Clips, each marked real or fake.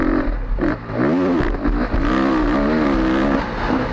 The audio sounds real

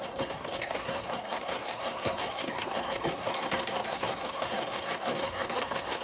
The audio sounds fake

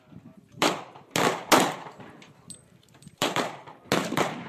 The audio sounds real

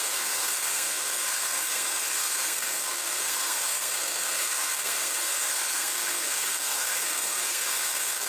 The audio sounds fake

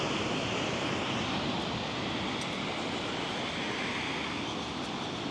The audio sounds real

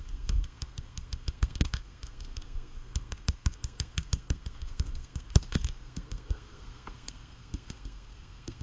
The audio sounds fake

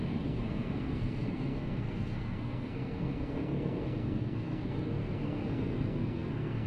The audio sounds fake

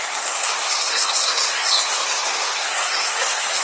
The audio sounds fake